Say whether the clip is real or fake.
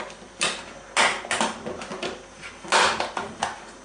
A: real